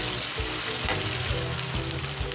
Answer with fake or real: real